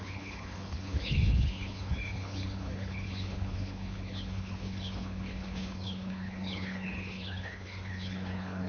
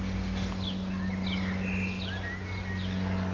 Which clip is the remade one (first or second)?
first